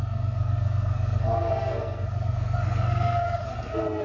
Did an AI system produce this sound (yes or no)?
yes